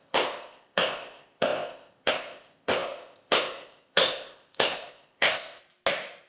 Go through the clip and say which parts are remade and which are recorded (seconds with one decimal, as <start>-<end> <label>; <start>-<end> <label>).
0.0-5.6 remade; 5.6-6.3 recorded